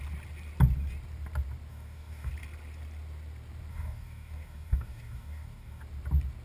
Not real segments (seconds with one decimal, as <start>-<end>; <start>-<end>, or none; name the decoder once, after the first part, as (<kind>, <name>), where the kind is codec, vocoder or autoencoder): 1.7-2.3 (codec, DAC); 3.7-5.8